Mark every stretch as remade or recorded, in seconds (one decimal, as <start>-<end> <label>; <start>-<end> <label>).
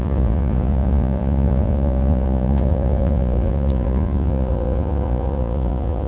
0.0-6.1 remade